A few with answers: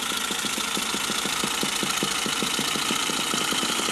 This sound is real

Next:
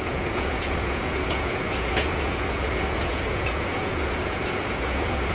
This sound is fake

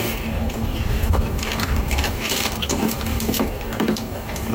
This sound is fake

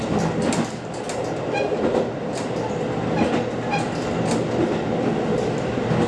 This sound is real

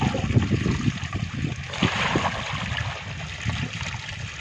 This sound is real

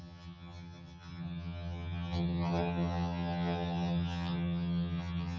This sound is fake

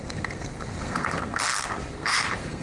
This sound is fake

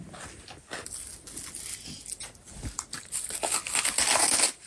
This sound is real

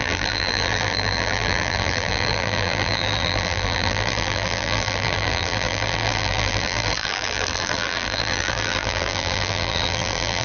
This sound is fake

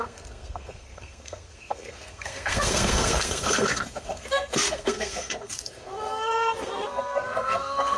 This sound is fake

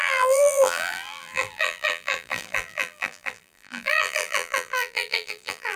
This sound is fake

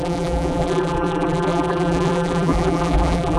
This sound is fake